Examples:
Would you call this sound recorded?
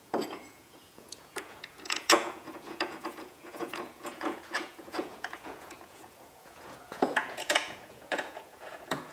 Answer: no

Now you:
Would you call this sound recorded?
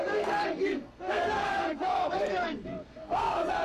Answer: no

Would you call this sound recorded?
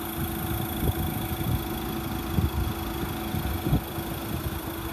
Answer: yes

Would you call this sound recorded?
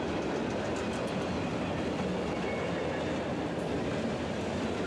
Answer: yes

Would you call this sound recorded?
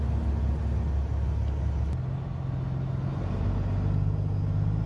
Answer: yes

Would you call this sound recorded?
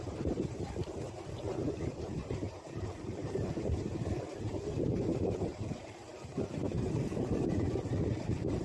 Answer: no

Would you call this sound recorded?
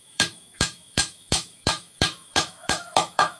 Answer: no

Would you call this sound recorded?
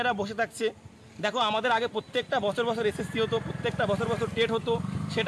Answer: yes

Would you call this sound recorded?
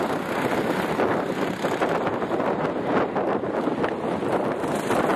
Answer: yes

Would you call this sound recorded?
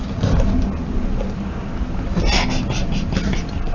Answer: yes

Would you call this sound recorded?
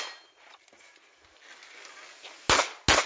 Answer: yes